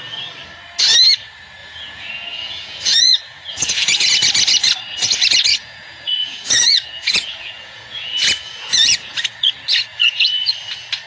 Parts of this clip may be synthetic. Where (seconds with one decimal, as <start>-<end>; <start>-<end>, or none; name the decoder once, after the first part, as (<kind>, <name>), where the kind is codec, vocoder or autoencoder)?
1.6-4.1 (vocoder, Vocos); 5.5-9.5; 9.9-10.5